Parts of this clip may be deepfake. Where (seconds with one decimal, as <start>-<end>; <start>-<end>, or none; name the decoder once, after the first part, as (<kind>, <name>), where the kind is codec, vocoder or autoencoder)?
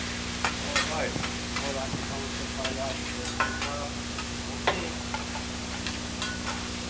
none